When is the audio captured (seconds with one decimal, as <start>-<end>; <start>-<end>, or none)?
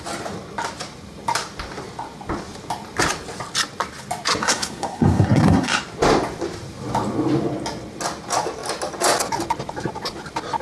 0.0-4.4; 5.8-10.6